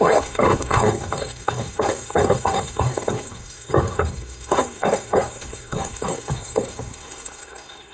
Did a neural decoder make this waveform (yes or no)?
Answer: yes